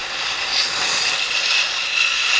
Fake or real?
real